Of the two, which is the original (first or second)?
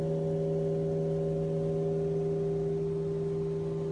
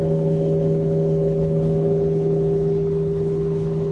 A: first